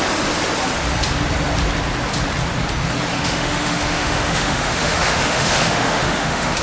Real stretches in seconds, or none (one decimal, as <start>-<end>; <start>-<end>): 0.0-3.1

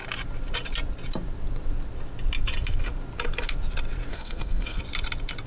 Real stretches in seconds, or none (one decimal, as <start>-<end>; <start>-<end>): 0.0-4.1; 4.8-5.5

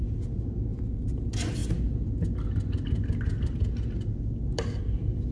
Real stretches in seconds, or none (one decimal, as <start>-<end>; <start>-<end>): 0.0-5.3

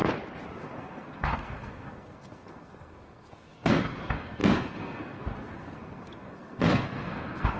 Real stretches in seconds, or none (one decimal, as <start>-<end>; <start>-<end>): 0.0-0.6

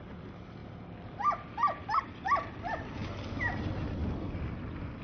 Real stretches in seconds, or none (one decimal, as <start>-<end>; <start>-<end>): 0.0-5.0

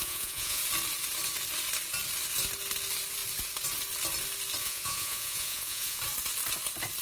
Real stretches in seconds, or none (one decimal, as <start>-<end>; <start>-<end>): 0.6-4.6; 6.0-7.0